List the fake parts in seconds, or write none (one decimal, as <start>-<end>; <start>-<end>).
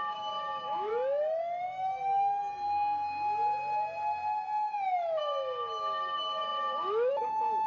0.0-0.9; 1.6-2.4; 5.2-7.7